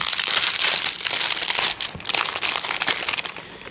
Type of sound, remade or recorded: recorded